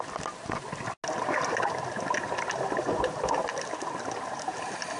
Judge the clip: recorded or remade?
recorded